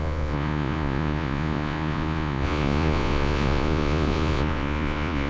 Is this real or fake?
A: fake